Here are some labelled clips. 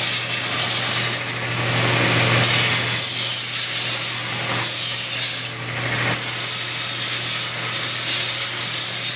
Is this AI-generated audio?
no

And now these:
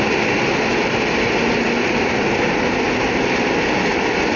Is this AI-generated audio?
no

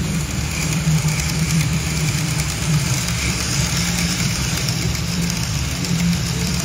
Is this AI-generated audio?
yes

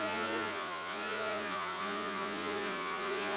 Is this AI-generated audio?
yes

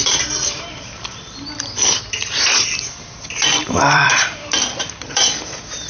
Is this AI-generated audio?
yes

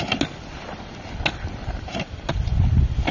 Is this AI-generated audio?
no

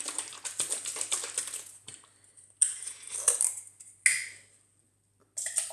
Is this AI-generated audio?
no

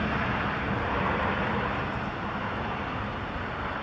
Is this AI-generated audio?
yes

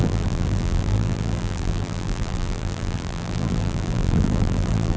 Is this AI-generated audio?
yes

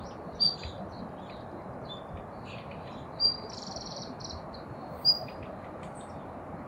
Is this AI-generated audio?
yes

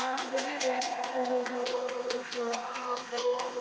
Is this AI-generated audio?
yes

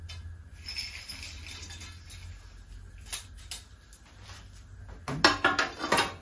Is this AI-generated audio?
no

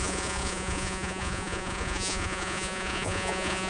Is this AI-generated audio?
yes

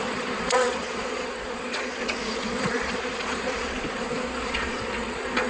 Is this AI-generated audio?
yes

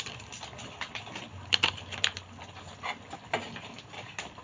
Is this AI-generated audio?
no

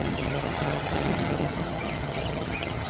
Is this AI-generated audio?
yes